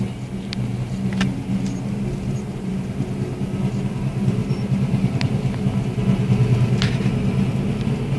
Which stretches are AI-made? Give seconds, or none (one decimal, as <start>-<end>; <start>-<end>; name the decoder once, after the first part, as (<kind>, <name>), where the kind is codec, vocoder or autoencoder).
4.4-5.2 (vocoder, BigVGAN v2)